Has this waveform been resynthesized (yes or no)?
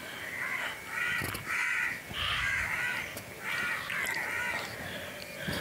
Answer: no